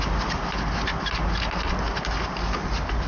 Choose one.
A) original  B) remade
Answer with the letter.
A